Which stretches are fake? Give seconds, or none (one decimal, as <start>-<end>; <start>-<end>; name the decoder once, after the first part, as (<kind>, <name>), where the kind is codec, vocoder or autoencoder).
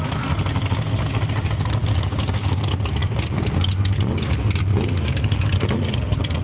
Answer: 1.8-2.6 (codec, DAC)